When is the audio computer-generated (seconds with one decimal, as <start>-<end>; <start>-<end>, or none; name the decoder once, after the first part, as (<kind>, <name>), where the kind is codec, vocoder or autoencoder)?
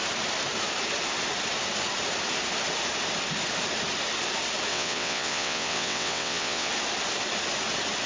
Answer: 4.7-6.7 (vocoder, WaveNeXt)